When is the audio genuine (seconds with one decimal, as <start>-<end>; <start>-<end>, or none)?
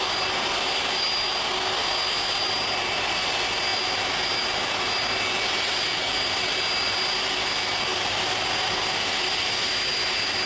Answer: 0.0-10.5